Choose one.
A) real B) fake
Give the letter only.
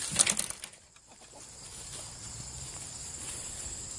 A